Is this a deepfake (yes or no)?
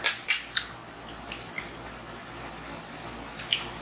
no